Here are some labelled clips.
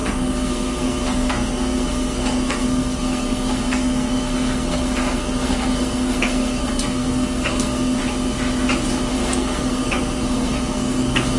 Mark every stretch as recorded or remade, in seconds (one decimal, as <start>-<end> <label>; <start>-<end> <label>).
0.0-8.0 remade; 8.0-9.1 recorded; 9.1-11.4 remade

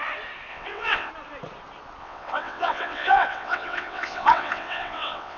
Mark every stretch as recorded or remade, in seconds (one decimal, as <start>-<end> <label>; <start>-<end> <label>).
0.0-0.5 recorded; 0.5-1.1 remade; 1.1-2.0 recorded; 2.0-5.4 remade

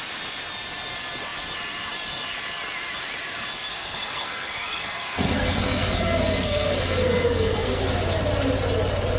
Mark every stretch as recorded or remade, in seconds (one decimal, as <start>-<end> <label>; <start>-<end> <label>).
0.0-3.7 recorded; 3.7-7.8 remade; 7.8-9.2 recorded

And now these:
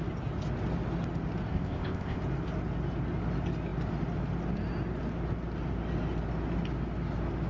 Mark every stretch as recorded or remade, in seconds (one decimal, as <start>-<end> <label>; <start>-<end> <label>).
0.0-1.5 recorded; 1.5-2.2 remade; 2.2-7.5 recorded

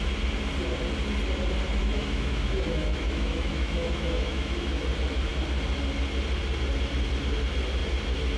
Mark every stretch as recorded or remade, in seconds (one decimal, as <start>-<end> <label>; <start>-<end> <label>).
0.0-1.8 recorded; 1.8-4.8 remade; 4.8-8.4 recorded